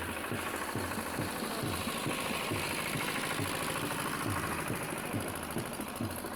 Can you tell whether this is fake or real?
real